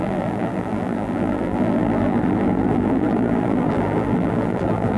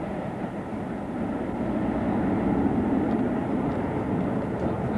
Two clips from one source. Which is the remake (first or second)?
first